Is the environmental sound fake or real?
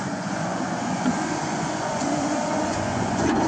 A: fake